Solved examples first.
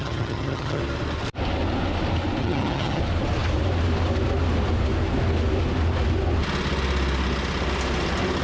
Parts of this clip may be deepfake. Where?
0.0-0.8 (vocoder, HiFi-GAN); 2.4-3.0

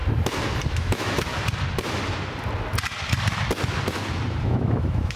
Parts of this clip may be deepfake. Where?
0.7-1.3 (autoencoder, DAC-VAE); 4.4-5.2

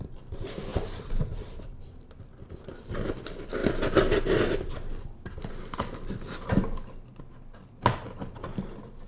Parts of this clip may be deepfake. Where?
0.7-1.7 (vocoder, BigVGAN v2)

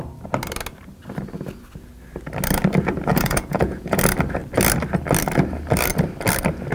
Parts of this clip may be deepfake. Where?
3.1-4.0 (vocoder, Vocos)

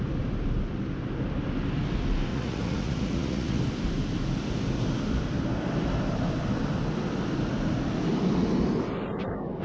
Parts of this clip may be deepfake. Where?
2.3-3.6 (vocoder, Vocos)

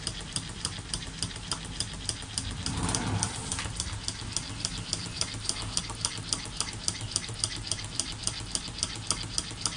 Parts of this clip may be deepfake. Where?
none